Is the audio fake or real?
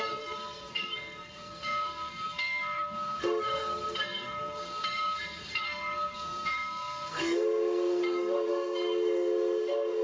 fake